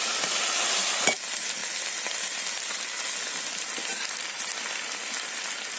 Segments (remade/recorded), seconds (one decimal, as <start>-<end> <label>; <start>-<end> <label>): 0.0-5.8 recorded